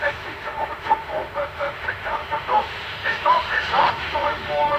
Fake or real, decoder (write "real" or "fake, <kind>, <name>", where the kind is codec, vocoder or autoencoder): fake, autoencoder, DAC-VAE